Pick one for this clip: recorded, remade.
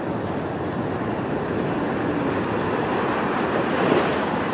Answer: recorded